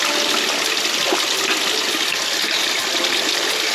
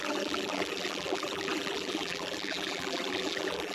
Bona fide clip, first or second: first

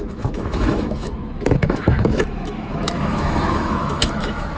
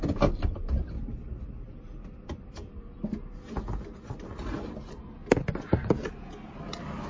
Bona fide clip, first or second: second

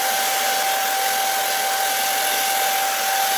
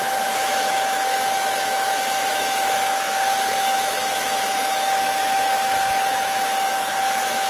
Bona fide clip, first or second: first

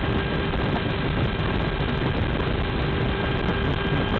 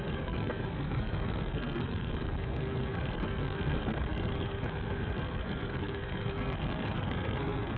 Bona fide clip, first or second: first